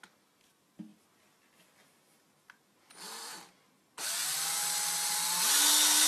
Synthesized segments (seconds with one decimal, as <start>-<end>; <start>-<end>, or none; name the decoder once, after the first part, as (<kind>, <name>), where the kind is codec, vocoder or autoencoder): none